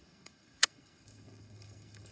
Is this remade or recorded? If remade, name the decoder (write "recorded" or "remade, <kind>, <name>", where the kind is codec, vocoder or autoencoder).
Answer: remade, codec, SNAC